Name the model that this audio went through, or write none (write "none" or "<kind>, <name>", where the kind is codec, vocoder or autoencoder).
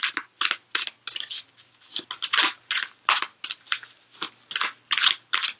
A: none